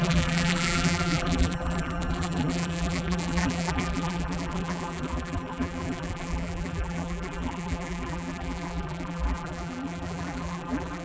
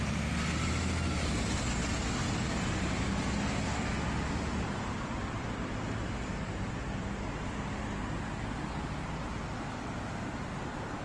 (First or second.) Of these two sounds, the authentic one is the second